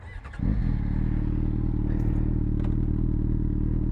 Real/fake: real